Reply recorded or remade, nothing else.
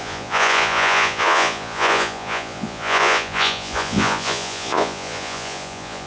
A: remade